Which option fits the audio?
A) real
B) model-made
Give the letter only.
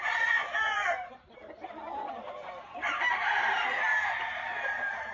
A